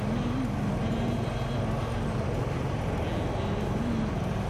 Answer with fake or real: real